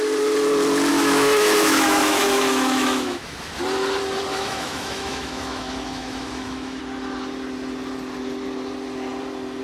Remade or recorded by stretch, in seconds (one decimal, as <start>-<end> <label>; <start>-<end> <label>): 0.0-0.9 recorded; 0.9-3.5 remade; 3.5-4.3 recorded; 4.3-6.8 remade; 6.8-9.6 recorded